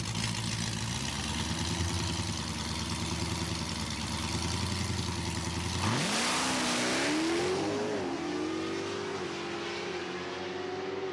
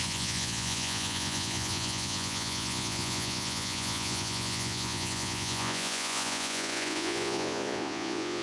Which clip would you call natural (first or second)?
first